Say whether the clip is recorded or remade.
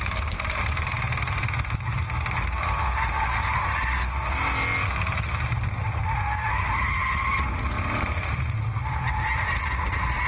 recorded